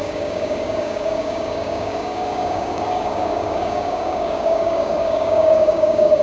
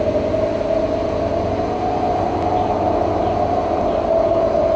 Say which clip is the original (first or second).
second